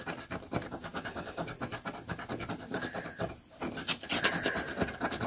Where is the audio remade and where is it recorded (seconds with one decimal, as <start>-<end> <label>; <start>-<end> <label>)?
0.0-5.3 recorded